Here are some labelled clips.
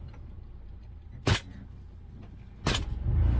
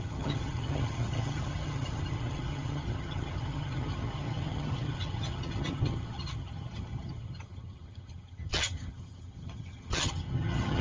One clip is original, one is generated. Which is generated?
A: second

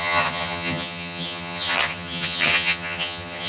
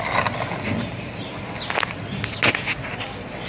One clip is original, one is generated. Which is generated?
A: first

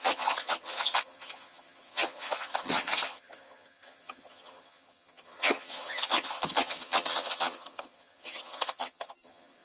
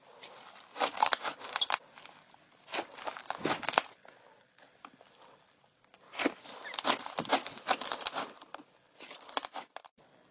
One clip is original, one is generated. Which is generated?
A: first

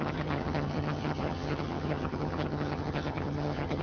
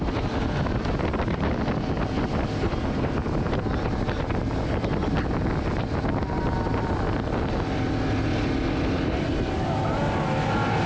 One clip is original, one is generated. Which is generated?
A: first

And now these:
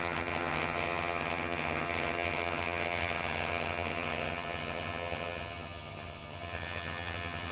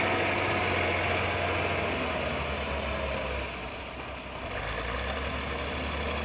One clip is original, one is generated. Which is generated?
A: first